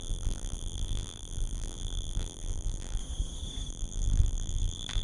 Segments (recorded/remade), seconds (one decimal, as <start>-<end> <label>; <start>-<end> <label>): 0.0-3.0 remade; 3.0-3.7 recorded; 3.7-5.0 remade